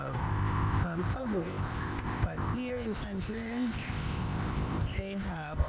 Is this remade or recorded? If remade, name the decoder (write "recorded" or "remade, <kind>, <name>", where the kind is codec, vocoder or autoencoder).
remade, codec, ZipCodec